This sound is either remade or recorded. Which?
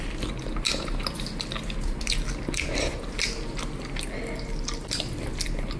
recorded